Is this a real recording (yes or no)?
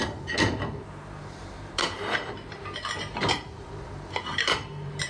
no